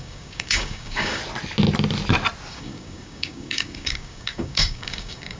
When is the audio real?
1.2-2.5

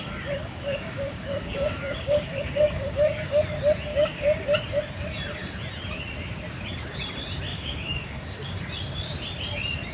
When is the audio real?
0.0-0.4; 3.4-3.9; 4.4-7.5; 8.6-9.9

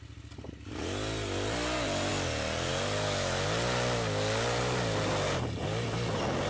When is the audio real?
0.0-6.5

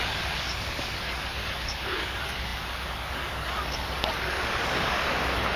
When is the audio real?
none